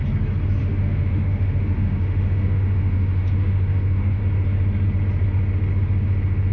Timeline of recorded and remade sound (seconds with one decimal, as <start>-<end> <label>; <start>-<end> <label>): 0.0-0.6 recorded; 0.6-4.2 remade; 4.2-6.5 recorded